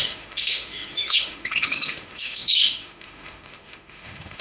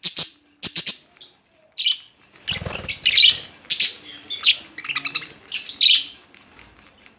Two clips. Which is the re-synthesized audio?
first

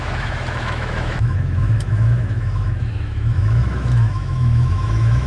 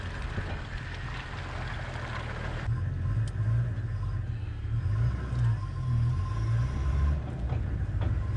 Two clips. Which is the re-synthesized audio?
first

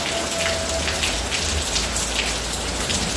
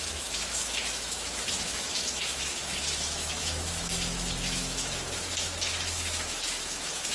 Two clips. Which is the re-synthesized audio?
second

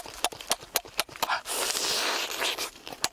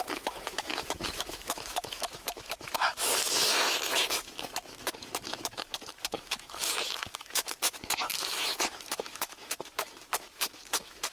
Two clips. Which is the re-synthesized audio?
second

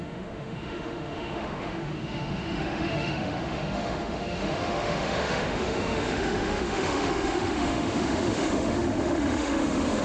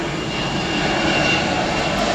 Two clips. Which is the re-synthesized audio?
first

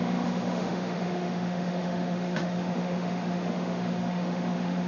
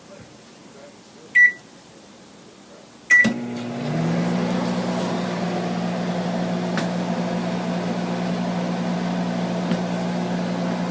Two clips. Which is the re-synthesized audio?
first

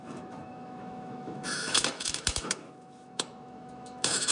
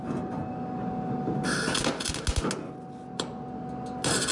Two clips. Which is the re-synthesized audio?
first